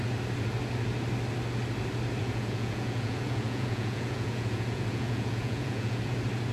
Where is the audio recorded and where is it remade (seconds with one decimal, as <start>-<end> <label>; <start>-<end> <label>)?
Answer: 0.0-2.2 recorded; 2.2-6.1 remade; 6.1-6.5 recorded

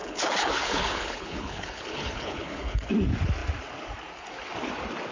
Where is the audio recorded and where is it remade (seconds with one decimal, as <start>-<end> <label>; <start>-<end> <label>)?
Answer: 0.0-2.9 remade; 2.9-5.1 recorded

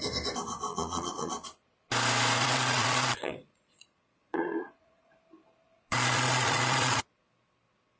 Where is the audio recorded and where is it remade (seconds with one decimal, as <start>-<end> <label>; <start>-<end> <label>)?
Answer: 0.0-0.7 recorded; 0.7-1.3 remade; 1.3-2.4 recorded; 2.4-5.1 remade; 5.1-5.9 recorded; 5.9-7.1 remade; 7.1-8.0 recorded

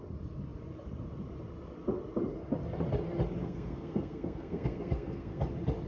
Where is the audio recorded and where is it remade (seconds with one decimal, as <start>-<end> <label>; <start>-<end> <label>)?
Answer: 0.0-3.4 recorded; 3.4-5.4 remade; 5.4-5.9 recorded

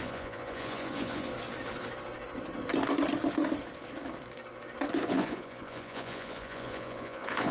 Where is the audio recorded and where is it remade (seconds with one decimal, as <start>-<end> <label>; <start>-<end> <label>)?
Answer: 0.0-1.3 remade; 1.3-5.0 recorded; 5.0-7.5 remade